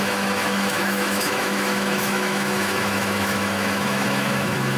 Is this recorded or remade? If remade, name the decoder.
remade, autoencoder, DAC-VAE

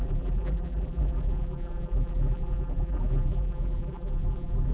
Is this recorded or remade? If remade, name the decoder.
remade, vocoder, BigVGAN v2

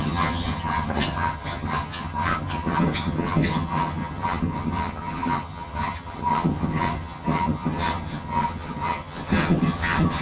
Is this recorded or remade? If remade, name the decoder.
remade, vocoder, HiFi-GAN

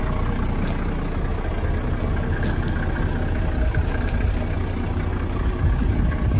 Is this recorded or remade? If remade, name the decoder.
recorded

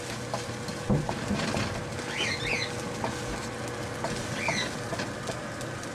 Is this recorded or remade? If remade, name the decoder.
recorded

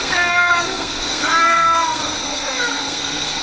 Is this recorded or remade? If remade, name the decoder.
remade, codec, SNAC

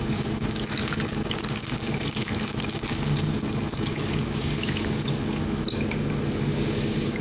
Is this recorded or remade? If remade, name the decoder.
remade, codec, DAC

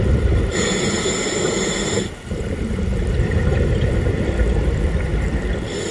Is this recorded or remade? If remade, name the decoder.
remade, vocoder, BigVGAN v2